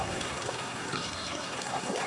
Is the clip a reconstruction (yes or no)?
yes